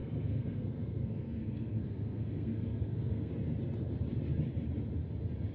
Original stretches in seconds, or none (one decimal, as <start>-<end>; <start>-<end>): 3.3-5.5